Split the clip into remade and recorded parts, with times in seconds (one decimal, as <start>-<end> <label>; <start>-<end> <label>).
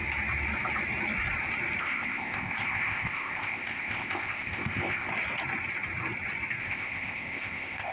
0.0-1.8 recorded; 1.8-5.1 remade; 5.1-6.6 recorded; 6.6-7.9 remade